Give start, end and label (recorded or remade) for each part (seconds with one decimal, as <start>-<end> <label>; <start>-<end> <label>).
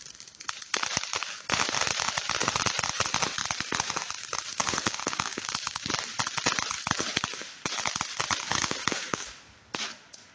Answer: 0.0-4.5 recorded; 4.5-5.9 remade; 5.9-8.5 recorded; 8.5-9.3 remade; 9.3-10.3 recorded